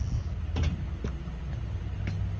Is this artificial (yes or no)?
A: no